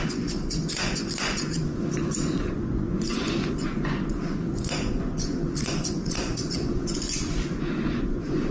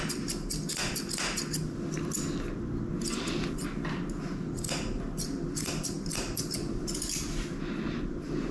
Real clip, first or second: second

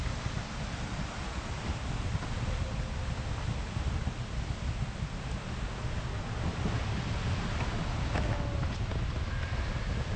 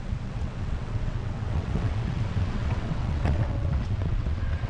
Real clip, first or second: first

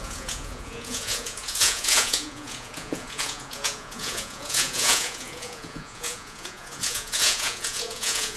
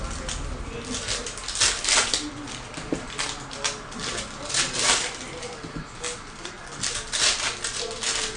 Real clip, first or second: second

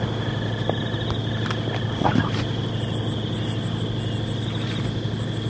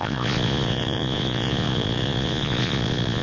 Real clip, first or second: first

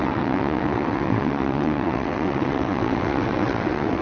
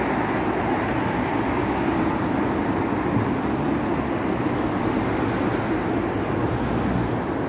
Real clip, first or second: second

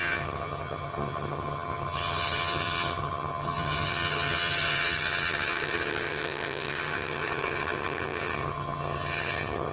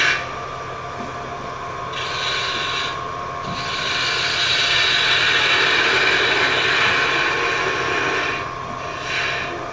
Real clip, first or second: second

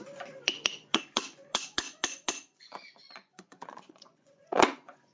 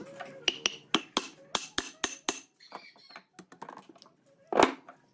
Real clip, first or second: second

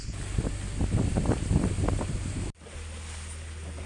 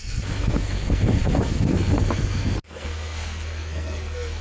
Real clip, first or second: first